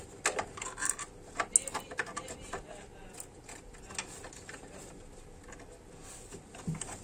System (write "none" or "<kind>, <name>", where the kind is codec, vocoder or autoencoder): none